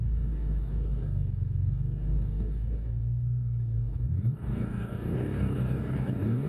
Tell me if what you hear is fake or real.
fake